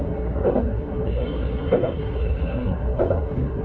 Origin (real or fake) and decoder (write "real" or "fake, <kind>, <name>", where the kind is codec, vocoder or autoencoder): fake, codec, SNAC